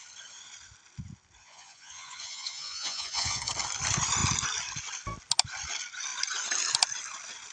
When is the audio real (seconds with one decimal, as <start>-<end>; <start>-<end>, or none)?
0.0-1.4; 3.5-7.5